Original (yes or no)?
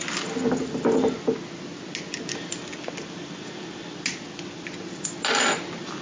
yes